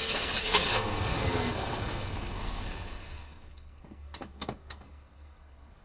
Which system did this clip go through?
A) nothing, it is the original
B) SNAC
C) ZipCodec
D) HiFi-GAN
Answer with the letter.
B